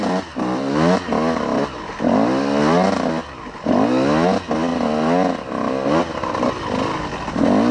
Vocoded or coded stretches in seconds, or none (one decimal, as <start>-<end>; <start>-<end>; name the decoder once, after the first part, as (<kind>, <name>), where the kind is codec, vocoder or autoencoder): none